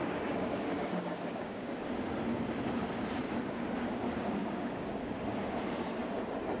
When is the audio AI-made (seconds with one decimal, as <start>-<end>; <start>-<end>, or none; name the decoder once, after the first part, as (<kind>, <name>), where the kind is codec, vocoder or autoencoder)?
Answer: 0.0-2.0 (codec, DAC); 4.4-5.1